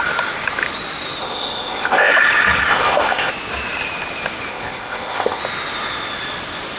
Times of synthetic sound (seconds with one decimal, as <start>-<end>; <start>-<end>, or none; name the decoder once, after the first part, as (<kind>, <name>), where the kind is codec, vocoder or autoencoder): 1.2-2.1 (codec, ZipCodec); 2.7-3.3; 4.5-5.4